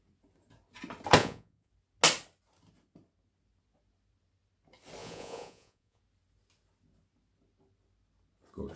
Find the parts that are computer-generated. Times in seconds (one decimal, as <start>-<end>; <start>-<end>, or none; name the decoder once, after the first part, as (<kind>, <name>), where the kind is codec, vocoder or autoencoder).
1.2-1.7 (vocoder, Vocos); 5.0-6.0